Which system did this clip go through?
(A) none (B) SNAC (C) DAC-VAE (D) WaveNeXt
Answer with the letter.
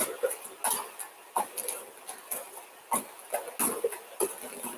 A